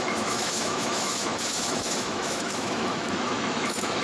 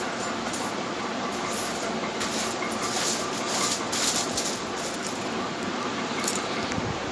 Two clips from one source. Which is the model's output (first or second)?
first